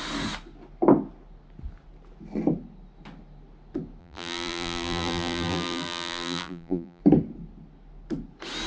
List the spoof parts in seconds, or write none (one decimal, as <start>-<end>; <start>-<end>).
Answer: 4.0-7.0